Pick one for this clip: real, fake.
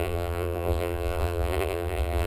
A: fake